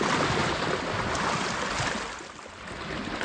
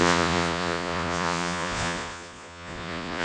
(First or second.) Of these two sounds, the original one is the first